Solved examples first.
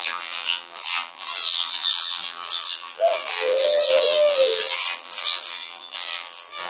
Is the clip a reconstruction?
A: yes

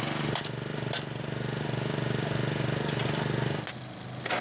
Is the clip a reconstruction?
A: no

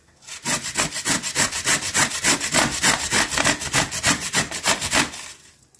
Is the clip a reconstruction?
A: no